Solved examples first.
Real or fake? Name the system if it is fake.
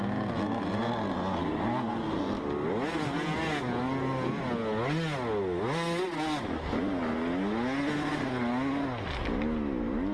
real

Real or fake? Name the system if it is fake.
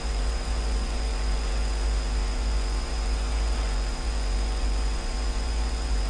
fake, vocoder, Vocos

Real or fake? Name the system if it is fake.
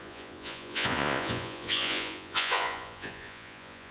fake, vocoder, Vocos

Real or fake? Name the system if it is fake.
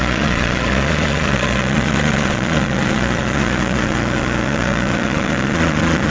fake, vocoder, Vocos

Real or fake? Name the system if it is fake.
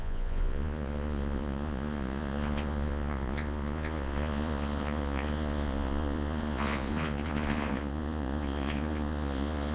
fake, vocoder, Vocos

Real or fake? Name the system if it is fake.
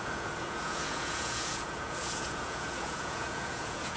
fake, vocoder, Vocos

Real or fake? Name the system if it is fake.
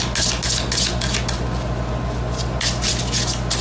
real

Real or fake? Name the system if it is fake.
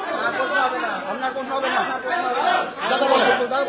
real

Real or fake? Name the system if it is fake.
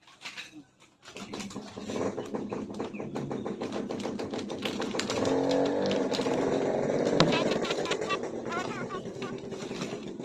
real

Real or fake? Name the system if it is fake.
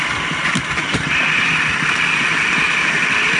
real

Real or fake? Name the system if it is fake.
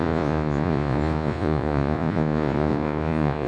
fake, vocoder, Vocos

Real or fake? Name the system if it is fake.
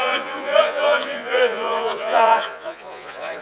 fake, vocoder, Vocos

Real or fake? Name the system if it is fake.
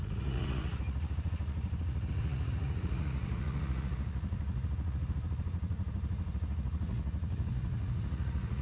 fake, vocoder, Vocos